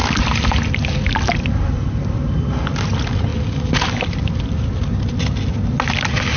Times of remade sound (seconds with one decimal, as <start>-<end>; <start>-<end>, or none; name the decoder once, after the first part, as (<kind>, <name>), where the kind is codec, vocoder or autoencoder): none